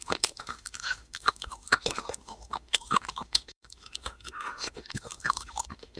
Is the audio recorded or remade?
remade